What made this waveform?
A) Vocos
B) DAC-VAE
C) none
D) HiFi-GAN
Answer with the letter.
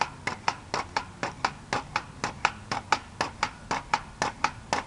C